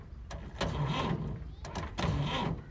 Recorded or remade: recorded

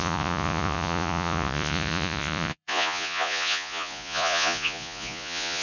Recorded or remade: remade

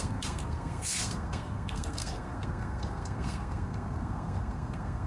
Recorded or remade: remade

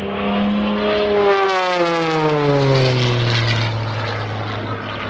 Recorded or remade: recorded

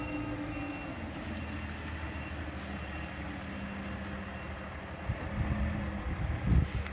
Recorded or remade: recorded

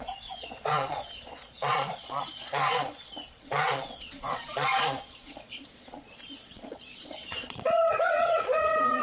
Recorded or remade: remade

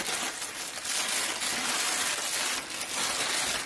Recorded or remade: recorded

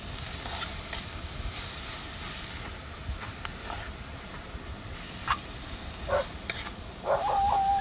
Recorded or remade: recorded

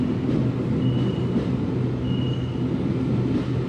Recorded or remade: recorded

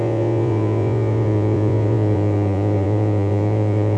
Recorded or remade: remade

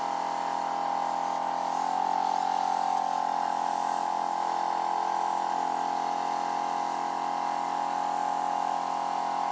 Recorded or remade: recorded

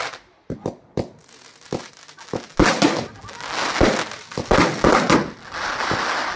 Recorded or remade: recorded